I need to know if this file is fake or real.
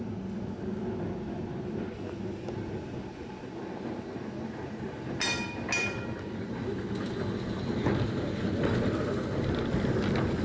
real